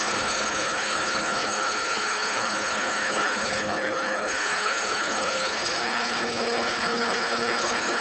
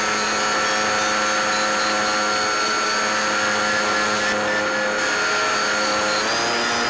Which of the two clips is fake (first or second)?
first